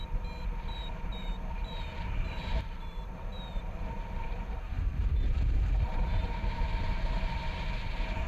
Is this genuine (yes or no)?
no